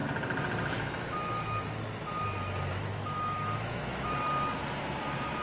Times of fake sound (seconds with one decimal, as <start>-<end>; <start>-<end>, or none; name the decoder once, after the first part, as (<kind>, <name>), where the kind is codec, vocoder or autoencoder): 2.9-4.1 (autoencoder, DAC-VAE)